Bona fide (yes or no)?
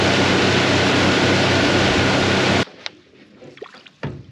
yes